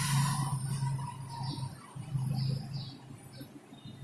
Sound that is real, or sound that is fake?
real